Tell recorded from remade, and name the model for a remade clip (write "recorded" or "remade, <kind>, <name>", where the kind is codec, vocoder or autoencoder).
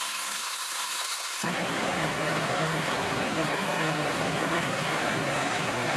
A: remade, codec, SNAC